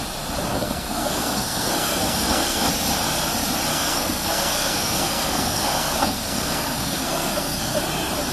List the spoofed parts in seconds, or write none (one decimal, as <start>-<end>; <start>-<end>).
0.5-2.7; 3.7-7.8